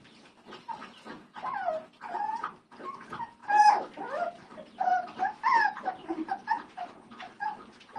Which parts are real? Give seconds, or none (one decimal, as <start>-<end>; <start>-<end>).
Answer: 0.0-6.0